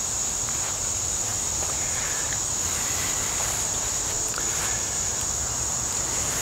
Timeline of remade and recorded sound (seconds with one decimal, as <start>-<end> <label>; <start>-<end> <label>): 0.0-6.4 recorded